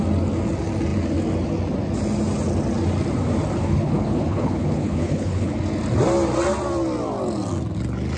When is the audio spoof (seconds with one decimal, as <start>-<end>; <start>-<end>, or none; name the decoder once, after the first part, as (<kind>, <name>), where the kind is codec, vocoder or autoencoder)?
3.6-5.5 (codec, HILCodec)